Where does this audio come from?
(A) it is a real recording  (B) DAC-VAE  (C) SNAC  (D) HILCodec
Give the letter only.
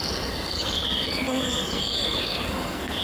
C